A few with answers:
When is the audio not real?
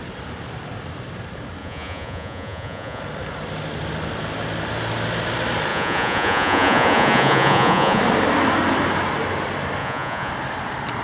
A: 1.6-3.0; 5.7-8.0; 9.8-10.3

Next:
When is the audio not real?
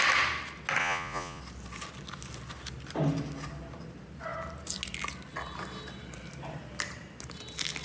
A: 0.8-1.4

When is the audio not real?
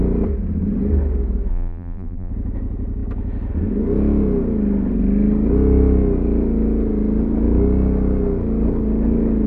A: 1.5-2.3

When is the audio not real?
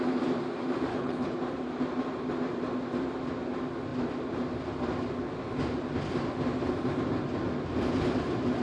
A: 0.9-1.4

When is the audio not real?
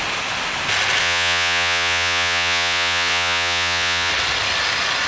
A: 1.0-4.1